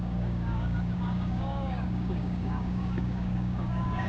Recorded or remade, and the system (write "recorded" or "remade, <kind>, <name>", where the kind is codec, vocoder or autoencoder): remade, codec, DAC